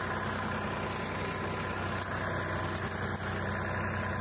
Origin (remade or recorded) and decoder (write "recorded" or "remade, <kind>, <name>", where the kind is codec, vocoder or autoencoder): recorded